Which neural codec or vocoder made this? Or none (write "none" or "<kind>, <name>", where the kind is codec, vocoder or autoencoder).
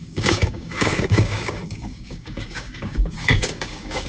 codec, DAC